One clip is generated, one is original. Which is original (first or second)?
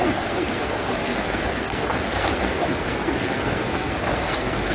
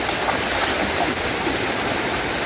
second